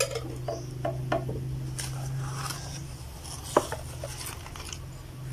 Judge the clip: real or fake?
real